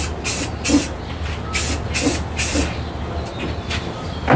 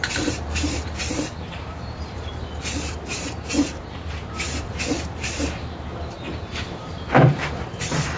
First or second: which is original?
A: first